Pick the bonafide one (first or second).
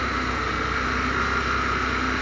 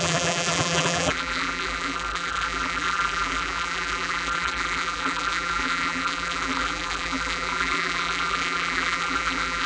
first